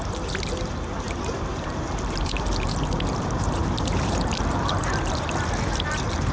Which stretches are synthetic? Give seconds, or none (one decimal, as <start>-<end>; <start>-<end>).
1.5-5.1